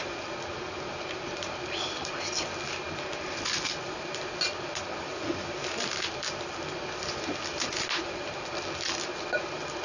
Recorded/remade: recorded